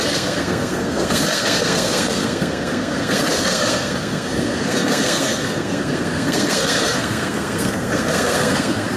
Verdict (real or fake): fake